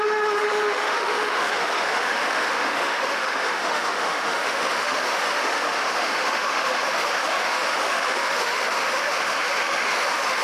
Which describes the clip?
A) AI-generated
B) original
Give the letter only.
A